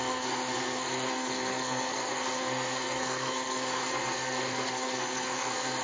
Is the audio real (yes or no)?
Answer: no